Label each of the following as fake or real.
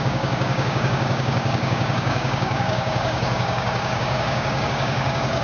fake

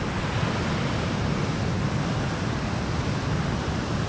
real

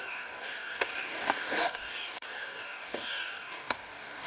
fake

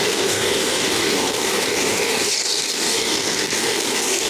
fake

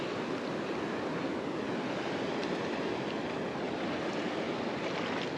real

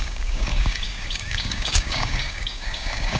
fake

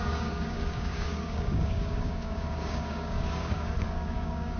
fake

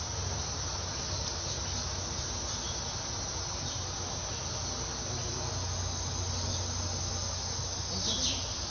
real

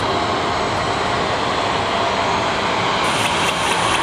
real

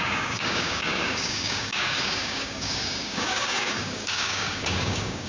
fake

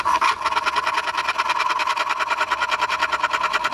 real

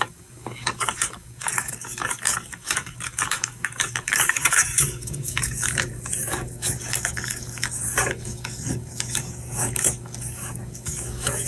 fake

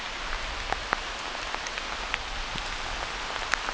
real